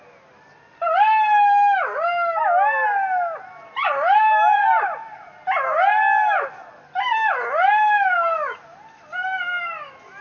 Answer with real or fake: real